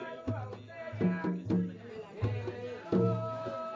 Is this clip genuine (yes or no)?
yes